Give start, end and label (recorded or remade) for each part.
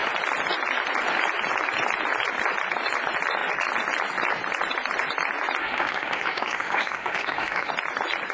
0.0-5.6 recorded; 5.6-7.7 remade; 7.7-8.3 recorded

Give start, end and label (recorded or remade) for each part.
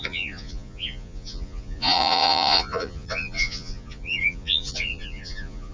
0.0-5.7 remade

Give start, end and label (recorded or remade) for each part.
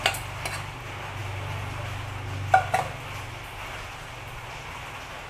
0.0-5.3 recorded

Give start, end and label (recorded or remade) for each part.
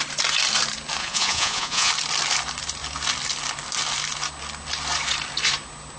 0.0-1.0 recorded; 1.0-1.9 remade; 1.9-6.0 recorded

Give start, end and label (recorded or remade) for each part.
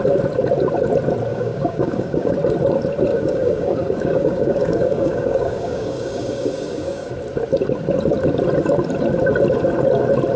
0.0-1.3 recorded; 1.3-2.3 remade; 2.3-3.1 recorded; 3.1-7.1 remade; 7.1-10.4 recorded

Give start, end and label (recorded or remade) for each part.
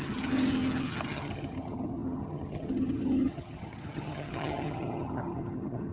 0.0-5.9 remade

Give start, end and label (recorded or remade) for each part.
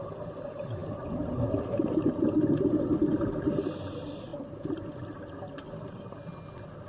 0.0-6.9 recorded